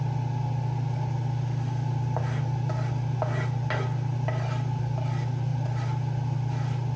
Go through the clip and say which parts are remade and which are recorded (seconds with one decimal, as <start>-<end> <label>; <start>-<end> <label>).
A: 0.0-7.0 recorded